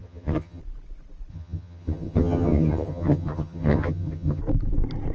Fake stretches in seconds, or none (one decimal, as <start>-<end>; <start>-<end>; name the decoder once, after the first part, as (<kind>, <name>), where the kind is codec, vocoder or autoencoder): 0.0-0.6 (vocoder, HiFi-GAN); 1.3-4.4